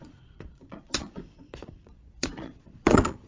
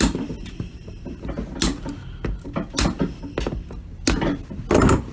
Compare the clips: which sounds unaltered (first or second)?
second